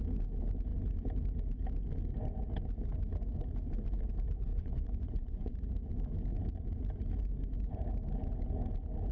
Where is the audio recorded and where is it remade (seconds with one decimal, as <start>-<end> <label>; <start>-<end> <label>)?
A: 0.0-4.5 recorded; 4.5-5.6 remade; 5.6-9.1 recorded